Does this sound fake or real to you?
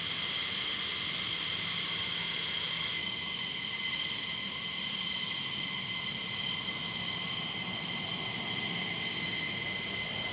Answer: real